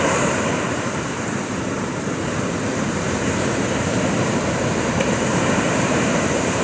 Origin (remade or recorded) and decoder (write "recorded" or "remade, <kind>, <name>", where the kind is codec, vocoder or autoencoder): remade, vocoder, BigVGAN v2